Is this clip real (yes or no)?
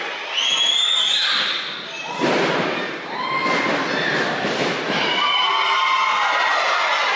yes